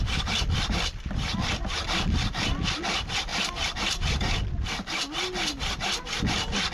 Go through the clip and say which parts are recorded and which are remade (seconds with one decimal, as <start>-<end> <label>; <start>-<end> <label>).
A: 0.0-3.3 recorded; 3.3-4.5 remade; 4.5-6.7 recorded